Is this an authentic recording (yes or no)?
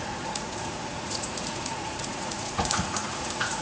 no